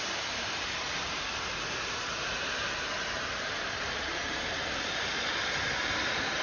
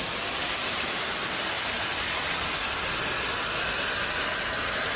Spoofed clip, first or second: first